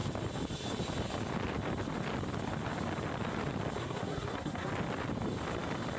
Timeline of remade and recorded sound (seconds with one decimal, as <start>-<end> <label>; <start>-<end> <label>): 0.0-3.8 recorded; 3.8-4.7 remade; 4.7-6.0 recorded